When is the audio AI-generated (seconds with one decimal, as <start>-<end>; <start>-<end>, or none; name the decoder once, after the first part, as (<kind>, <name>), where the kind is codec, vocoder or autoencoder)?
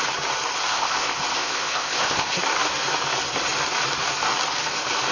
0.7-2.4 (codec, ZipCodec)